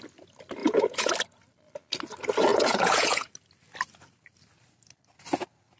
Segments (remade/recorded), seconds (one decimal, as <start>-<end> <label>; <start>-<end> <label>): 0.0-0.6 recorded; 0.6-1.1 remade; 1.1-2.5 recorded; 2.5-3.3 remade; 3.3-5.8 recorded